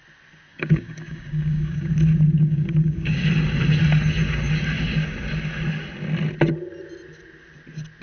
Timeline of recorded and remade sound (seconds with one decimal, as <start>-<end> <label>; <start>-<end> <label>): 0.0-0.5 recorded; 0.5-1.9 remade; 1.9-2.4 recorded; 2.4-3.2 remade; 3.2-8.0 recorded